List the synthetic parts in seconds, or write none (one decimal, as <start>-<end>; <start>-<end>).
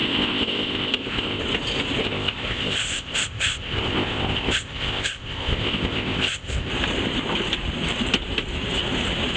0.0-1.4; 2.0-6.7